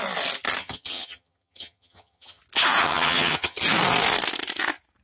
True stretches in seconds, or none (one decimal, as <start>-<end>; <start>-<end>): 0.0-0.6; 2.4-2.8; 3.6-5.0